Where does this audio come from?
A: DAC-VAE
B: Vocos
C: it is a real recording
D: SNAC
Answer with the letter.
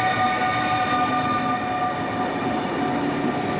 C